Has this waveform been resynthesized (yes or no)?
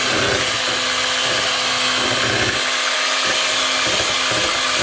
no